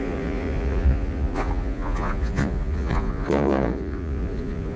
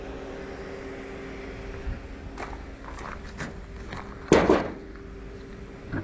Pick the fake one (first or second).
first